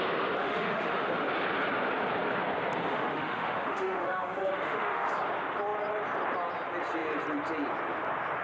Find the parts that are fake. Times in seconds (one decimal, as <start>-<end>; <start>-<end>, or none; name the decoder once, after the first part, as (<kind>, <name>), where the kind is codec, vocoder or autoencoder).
0.4-1.1 (autoencoder, DAC-VAE); 2.9-5.1